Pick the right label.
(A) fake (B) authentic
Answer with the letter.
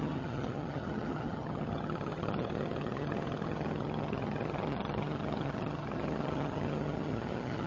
A